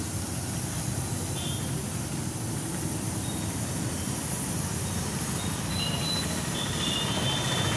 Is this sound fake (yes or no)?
no